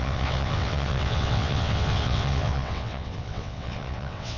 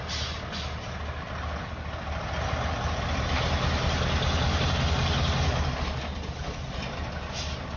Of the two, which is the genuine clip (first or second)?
second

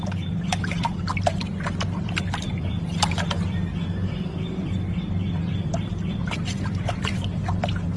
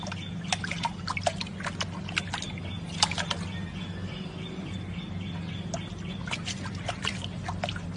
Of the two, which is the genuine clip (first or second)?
second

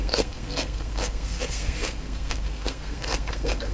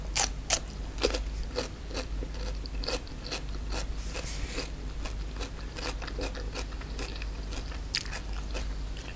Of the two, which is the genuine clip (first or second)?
second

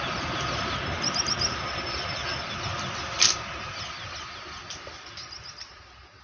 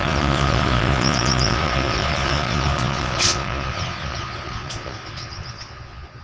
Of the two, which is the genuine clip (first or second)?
first